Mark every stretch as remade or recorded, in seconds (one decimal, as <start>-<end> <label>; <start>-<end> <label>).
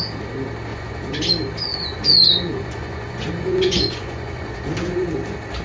0.0-0.7 recorded; 0.7-1.2 remade; 1.2-1.7 recorded; 1.7-5.1 remade; 5.1-5.6 recorded